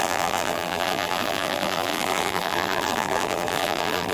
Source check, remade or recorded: remade